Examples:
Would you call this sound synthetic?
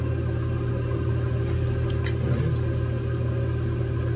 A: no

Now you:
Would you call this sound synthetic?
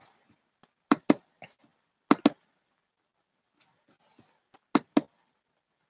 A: no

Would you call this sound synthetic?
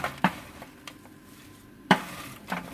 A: yes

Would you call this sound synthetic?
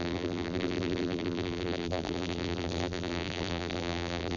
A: yes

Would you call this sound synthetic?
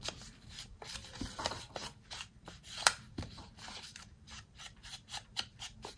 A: yes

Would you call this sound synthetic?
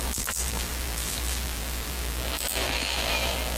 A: yes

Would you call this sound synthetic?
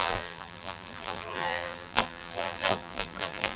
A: yes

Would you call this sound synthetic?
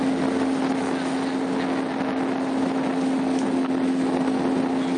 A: no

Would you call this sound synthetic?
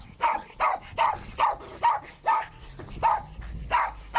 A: no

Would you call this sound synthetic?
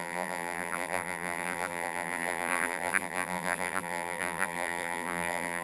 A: yes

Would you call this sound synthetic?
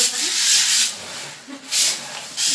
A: yes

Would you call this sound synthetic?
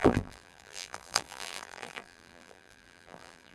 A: yes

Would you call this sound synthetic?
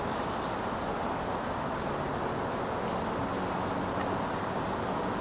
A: no